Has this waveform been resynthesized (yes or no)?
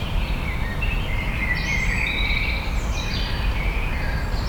yes